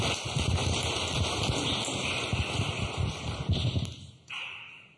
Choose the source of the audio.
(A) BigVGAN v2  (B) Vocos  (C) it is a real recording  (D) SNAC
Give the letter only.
C